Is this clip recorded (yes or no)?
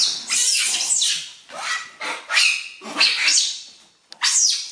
yes